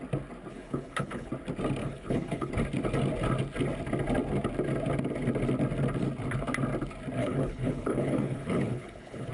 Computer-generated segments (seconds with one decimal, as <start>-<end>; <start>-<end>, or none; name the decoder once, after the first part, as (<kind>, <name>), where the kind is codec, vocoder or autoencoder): 0.5-1.3 (codec, HILCodec); 1.8-2.5; 7.2-9.3